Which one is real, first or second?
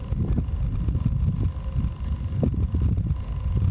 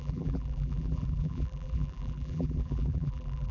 first